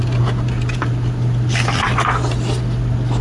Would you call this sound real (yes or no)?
yes